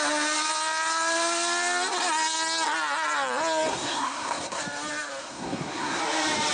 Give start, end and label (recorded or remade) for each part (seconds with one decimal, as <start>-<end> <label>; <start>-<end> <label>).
0.0-3.7 recorded; 3.7-4.6 remade; 4.6-5.2 recorded; 5.2-6.0 remade; 6.0-6.5 recorded